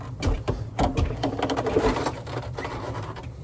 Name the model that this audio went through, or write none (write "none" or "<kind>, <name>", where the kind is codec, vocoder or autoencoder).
vocoder, BigVGAN v2